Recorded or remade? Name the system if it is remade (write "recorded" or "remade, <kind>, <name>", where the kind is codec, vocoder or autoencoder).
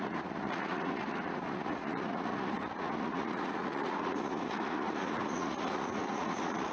remade, vocoder, Vocos